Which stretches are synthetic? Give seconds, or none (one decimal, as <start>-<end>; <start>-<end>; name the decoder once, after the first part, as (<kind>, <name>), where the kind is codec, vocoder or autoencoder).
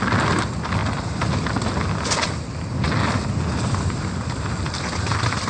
none